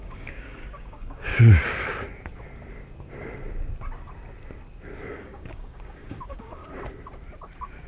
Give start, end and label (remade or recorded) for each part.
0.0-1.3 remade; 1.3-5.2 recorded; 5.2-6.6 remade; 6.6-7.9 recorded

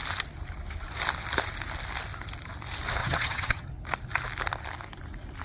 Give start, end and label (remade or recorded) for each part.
0.0-3.0 recorded; 3.0-3.7 remade; 3.7-5.4 recorded

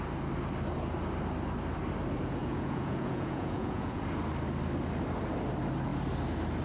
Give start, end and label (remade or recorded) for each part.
0.0-2.4 recorded; 2.4-4.0 remade; 4.0-6.6 recorded

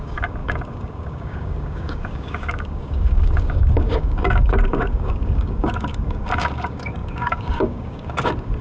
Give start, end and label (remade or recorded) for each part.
0.0-8.6 remade

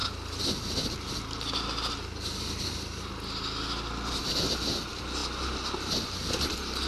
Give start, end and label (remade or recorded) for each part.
0.0-6.9 recorded

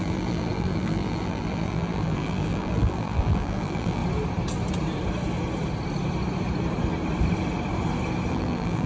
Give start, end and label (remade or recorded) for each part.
0.0-4.0 remade; 4.0-8.3 recorded; 8.3-8.9 remade